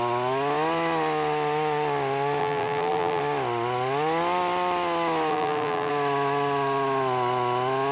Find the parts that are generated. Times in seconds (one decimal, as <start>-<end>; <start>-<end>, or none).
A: 2.4-3.2; 5.3-5.9